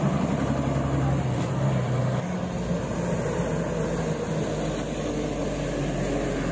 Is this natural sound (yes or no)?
yes